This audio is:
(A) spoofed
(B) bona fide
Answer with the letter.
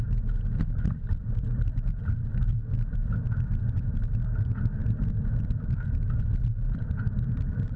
A